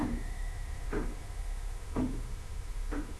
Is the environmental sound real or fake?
fake